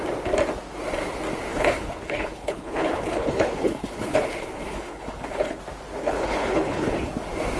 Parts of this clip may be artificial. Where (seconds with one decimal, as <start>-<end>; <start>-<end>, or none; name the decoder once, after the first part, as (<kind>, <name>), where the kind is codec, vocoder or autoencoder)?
1.5-5.6 (codec, HILCodec); 6.0-7.1